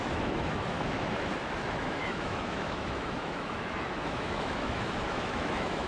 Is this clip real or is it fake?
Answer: fake